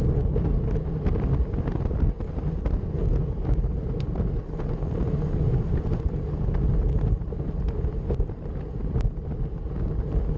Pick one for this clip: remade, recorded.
recorded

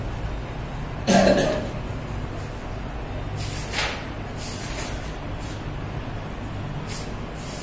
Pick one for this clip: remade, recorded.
recorded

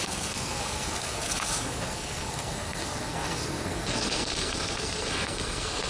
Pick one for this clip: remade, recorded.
remade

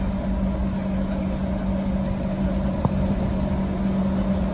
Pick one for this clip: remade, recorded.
recorded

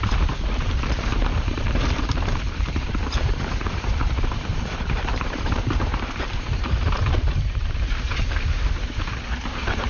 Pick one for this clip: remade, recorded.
remade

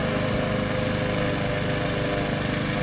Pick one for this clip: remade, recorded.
recorded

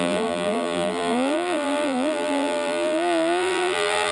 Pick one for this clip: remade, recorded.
remade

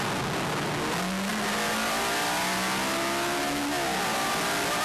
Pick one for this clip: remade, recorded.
recorded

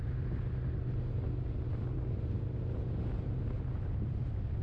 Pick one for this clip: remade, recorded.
recorded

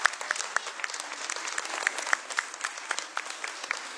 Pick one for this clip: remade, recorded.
recorded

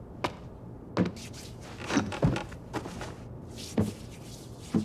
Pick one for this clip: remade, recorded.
recorded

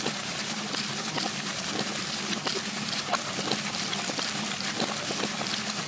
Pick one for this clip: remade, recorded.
remade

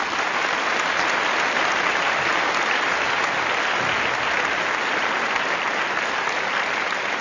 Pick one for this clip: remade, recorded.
recorded